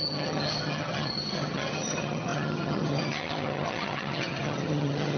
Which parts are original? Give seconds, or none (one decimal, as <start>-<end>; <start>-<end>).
none